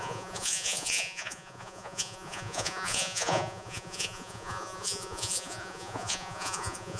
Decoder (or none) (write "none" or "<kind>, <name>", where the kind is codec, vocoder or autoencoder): vocoder, Vocos